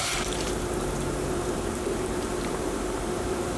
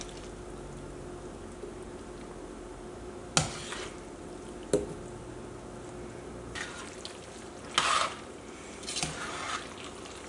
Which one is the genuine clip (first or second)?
second